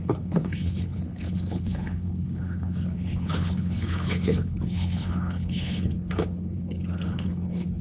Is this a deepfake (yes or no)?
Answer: yes